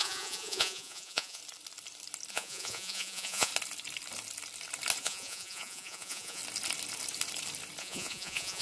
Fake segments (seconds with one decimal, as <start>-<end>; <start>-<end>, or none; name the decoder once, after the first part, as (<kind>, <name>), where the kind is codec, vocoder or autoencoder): 0.0-1.4 (vocoder, Vocos); 2.3-3.5; 5.0-6.4; 7.8-8.6